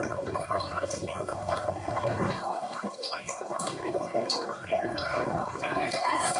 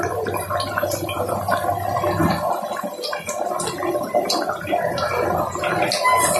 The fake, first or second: first